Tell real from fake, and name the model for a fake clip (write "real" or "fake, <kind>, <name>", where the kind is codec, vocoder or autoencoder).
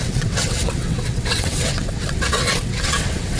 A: fake, vocoder, WaveNeXt